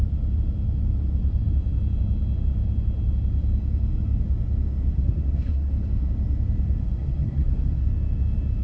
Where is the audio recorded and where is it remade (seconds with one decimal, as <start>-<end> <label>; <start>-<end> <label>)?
0.0-4.9 recorded; 4.9-5.7 remade; 5.7-6.8 recorded; 6.8-7.8 remade; 7.8-8.6 recorded